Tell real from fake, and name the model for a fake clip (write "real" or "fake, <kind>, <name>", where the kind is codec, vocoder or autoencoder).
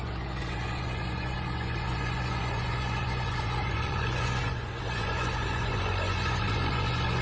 fake, vocoder, Vocos